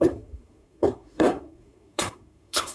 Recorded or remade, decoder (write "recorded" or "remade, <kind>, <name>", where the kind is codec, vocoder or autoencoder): remade, codec, SNAC